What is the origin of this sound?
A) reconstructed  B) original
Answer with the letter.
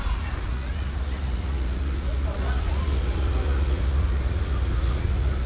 A